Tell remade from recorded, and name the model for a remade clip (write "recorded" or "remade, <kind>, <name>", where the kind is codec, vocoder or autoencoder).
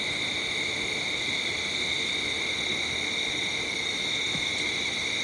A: recorded